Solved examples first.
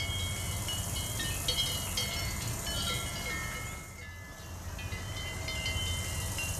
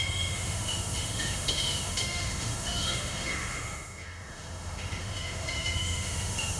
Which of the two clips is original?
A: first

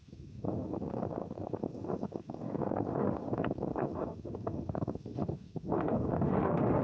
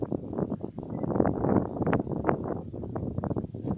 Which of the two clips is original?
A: second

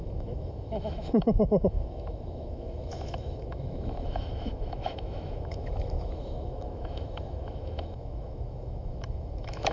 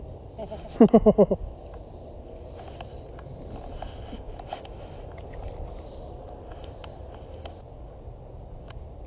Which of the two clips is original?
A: second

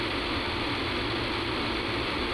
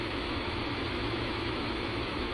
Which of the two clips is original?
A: first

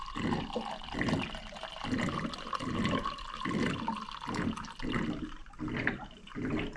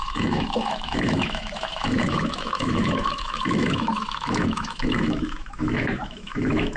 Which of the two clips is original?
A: first